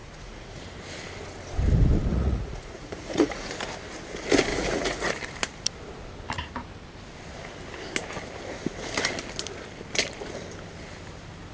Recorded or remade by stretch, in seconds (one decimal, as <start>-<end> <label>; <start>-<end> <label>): 0.0-0.6 remade; 0.6-2.1 recorded; 2.1-3.5 remade; 3.5-4.5 recorded; 4.5-5.1 remade; 5.1-11.5 recorded